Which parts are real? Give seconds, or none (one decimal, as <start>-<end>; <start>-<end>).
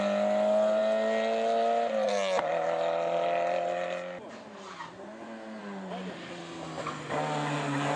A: 0.0-8.0